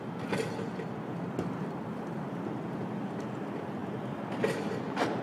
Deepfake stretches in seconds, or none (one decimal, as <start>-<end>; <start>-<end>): none